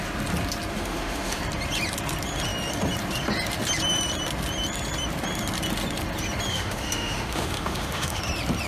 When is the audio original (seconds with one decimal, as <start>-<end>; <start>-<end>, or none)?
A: 0.0-0.7; 1.4-6.5; 8.2-8.7